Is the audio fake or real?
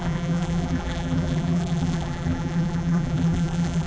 fake